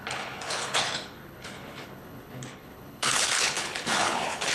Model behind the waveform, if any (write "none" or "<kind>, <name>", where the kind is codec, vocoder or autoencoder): codec, HILCodec